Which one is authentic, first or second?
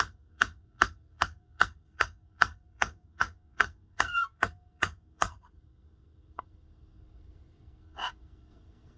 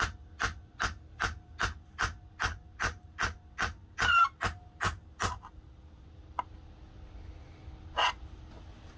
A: second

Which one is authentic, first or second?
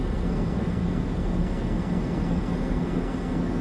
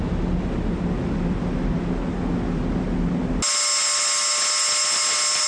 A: second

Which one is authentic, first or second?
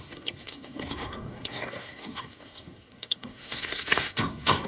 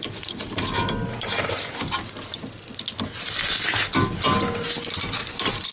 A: second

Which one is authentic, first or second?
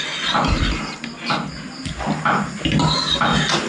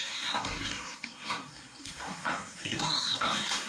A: first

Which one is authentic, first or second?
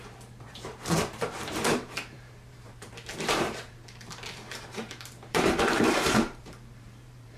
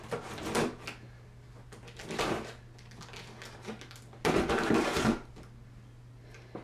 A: second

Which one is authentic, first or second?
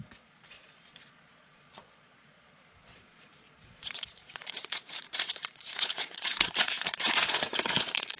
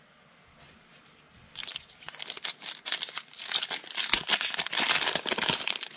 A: second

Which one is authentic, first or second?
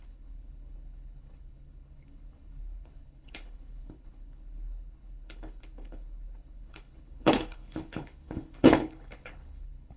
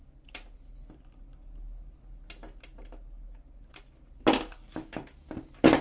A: second